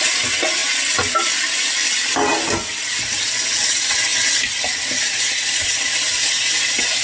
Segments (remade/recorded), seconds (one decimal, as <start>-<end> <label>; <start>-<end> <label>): 0.0-7.0 recorded